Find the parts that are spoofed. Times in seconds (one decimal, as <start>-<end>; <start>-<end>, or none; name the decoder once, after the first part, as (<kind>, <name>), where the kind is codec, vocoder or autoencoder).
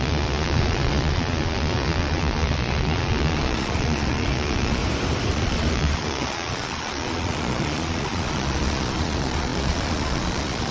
0.0-4.8 (vocoder, Vocos); 5.3-10.7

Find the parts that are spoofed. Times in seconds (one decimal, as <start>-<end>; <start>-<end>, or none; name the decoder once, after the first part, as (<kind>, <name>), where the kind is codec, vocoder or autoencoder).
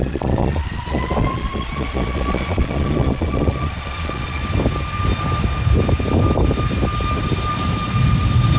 0.0-4.4 (vocoder, Vocos)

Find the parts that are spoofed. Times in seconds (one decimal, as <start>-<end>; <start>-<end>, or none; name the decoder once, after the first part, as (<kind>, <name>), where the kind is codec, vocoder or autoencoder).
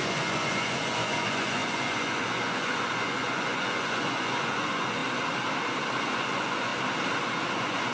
0.0-5.0 (vocoder, Vocos); 6.0-6.7; 7.5-7.9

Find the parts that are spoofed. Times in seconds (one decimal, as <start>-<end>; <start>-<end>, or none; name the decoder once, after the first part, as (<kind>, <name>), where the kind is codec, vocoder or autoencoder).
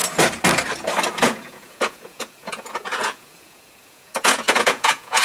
1.1-5.2 (vocoder, Vocos)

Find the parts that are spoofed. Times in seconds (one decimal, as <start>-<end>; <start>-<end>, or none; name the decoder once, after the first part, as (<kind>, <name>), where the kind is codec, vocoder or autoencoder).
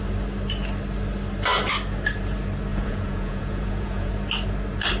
2.7-4.1 (vocoder, Vocos)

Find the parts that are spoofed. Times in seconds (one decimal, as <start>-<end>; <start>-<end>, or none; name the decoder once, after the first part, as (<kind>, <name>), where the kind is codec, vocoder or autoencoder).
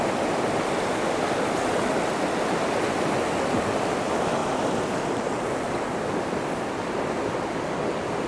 none